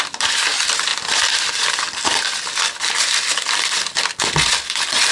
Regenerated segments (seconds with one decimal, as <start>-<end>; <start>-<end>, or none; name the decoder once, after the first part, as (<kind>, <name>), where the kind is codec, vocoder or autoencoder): none